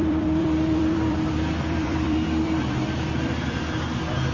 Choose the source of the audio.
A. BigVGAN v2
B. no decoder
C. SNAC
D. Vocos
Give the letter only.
A